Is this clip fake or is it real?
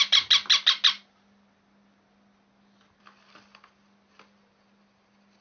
real